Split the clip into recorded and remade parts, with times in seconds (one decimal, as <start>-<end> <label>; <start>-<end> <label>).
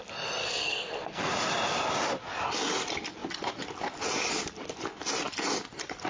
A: 0.0-0.4 recorded; 0.4-1.3 remade; 1.3-6.1 recorded